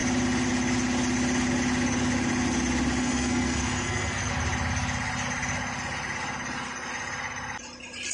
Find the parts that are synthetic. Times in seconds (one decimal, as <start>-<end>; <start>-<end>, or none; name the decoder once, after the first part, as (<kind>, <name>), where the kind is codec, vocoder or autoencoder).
3.0-4.3 (codec, SNAC)